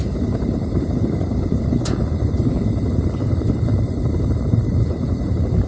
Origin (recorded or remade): remade